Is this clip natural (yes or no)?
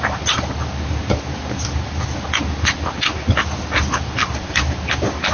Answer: yes